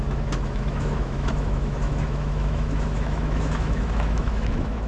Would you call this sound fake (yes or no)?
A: yes